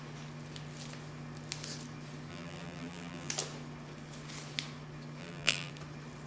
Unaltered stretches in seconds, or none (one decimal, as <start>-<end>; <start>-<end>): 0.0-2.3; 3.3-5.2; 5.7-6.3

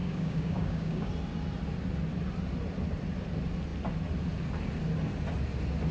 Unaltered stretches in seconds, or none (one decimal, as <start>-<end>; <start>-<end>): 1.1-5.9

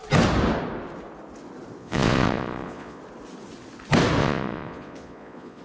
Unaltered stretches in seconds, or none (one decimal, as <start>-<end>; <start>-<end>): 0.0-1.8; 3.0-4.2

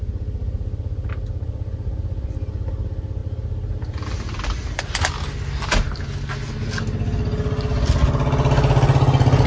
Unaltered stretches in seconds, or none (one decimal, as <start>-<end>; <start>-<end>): 0.0-9.5